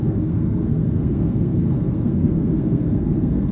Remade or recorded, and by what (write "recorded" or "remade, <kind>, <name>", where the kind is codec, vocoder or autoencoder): remade, codec, SNAC